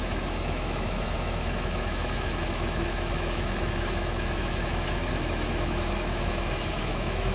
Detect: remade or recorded remade